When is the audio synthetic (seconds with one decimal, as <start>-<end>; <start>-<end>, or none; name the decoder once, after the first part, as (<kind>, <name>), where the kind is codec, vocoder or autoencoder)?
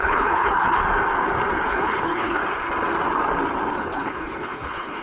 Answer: 0.0-0.8 (codec, HILCodec); 1.7-2.4; 3.7-5.0